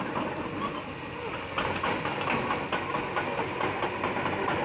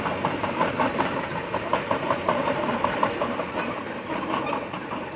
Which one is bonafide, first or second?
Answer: first